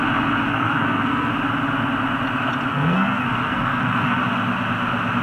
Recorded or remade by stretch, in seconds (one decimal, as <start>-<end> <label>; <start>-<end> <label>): 0.0-0.5 recorded; 0.5-1.3 remade; 1.3-2.7 recorded; 2.7-4.2 remade; 4.2-5.2 recorded